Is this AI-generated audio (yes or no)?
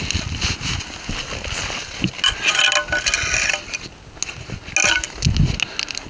no